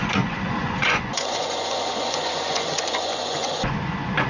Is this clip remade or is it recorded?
remade